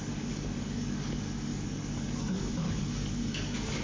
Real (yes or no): no